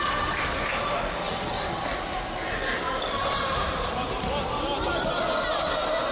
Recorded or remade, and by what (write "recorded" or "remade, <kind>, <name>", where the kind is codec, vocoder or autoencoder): recorded